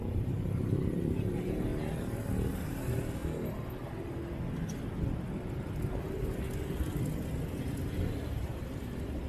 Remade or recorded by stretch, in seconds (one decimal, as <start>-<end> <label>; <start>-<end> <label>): 0.0-1.7 remade; 1.7-2.5 recorded; 2.5-3.2 remade; 3.2-8.1 recorded; 8.1-9.3 remade